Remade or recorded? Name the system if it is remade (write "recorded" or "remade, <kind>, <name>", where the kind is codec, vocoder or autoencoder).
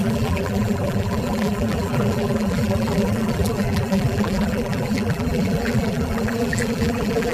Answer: remade, vocoder, BigVGAN v2